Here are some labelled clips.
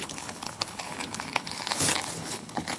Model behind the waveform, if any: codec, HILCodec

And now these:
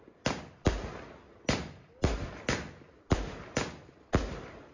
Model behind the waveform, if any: none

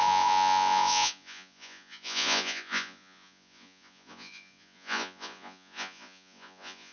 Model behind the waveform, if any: vocoder, Vocos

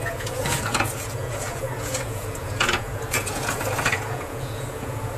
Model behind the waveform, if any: vocoder, Vocos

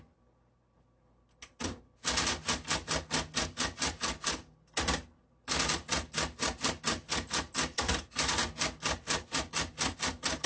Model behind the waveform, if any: none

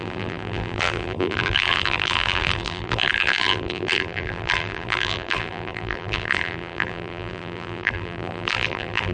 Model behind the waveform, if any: vocoder, BigVGAN v2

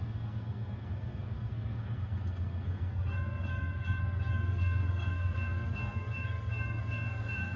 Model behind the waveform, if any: codec, SNAC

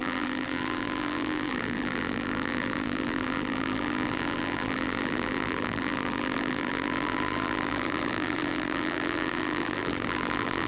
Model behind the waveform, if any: vocoder, BigVGAN v2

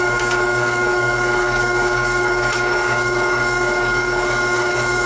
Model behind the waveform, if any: codec, DAC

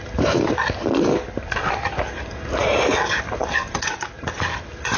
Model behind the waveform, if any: none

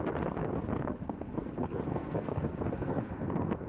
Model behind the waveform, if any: codec, SNAC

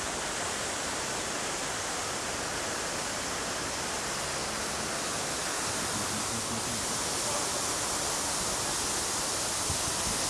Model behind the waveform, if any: none